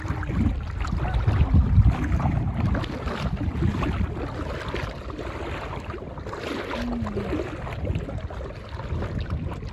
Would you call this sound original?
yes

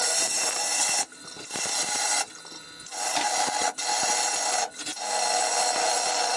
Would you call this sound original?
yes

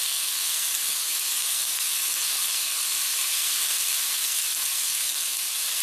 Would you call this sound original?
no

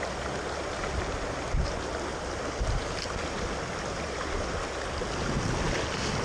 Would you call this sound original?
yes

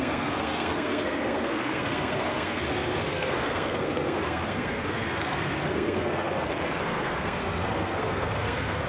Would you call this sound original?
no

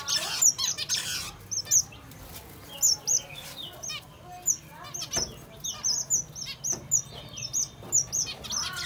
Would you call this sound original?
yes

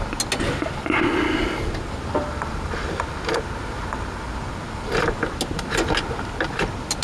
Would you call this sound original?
yes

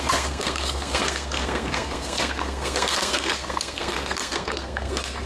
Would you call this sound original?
no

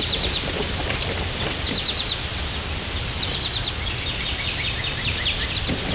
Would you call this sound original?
yes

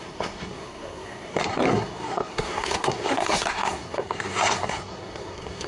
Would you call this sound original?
no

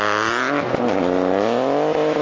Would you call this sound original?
yes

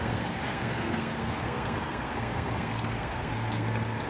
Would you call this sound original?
no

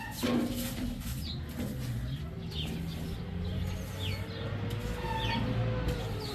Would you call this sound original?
yes